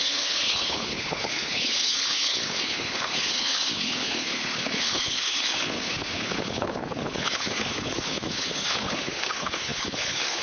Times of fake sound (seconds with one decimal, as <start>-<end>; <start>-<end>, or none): 0.0-10.4